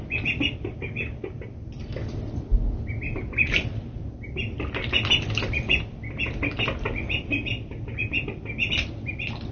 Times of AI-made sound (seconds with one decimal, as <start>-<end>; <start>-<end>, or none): none